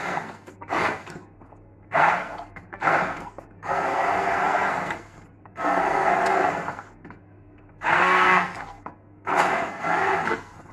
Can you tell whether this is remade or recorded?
remade